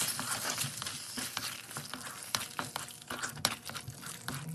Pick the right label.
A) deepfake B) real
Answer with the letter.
B